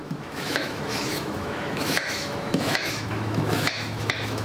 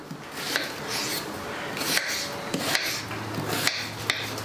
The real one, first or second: second